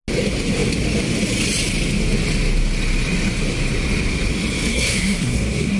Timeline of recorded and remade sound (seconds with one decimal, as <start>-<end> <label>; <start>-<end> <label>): 0.0-4.7 recorded; 4.7-5.8 remade